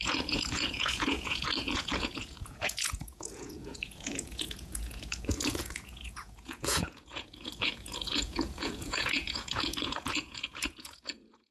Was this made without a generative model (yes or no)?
no